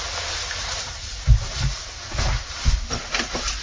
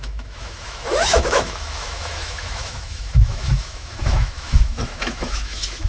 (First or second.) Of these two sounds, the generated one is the second